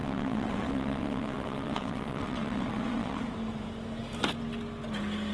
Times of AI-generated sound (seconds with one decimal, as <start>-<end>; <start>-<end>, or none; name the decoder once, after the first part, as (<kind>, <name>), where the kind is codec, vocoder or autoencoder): 0.0-3.2 (vocoder, WaveNeXt)